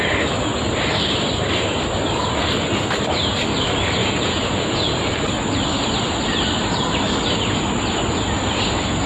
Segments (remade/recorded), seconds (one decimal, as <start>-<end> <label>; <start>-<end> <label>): 0.0-4.0 recorded; 4.0-5.1 remade; 5.1-9.1 recorded